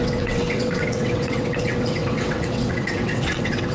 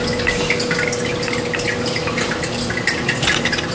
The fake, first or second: first